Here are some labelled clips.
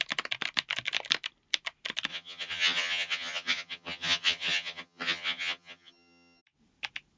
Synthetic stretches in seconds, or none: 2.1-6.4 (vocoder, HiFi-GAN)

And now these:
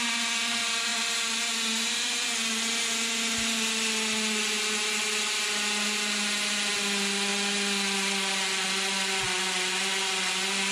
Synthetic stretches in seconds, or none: none